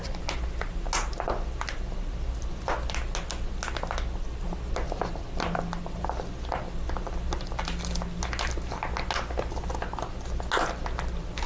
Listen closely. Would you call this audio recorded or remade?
recorded